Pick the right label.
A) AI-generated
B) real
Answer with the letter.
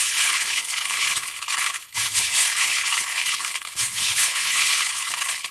A